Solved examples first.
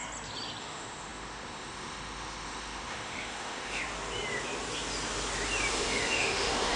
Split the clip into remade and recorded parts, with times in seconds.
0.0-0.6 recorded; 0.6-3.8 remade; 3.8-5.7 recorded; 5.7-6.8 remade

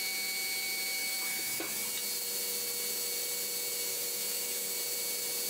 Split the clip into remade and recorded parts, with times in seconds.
0.0-1.0 recorded; 1.0-1.6 remade; 1.6-3.9 recorded; 3.9-4.7 remade; 4.7-5.5 recorded

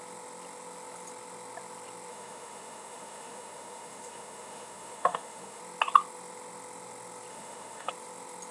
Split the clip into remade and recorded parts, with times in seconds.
0.0-2.1 recorded; 2.1-5.6 remade; 5.6-7.3 recorded; 7.3-7.9 remade; 7.9-8.5 recorded